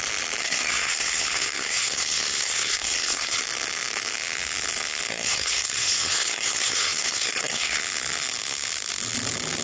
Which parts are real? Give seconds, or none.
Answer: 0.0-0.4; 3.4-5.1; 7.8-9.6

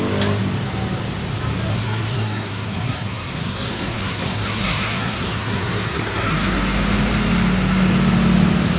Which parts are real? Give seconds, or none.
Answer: 0.0-1.7; 6.6-8.8

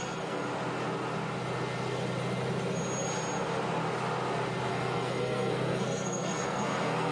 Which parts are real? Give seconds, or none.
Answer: 0.4-4.7

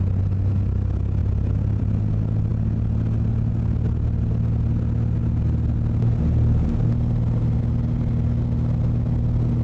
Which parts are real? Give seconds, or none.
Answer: 0.0-9.6

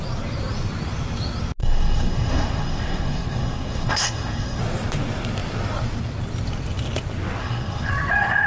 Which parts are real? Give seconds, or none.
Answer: 0.0-1.6; 4.6-7.4; 7.9-8.5

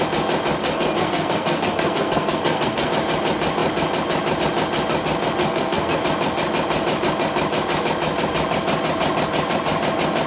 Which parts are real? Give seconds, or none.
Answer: 0.0-0.6; 2.9-5.4; 6.0-10.3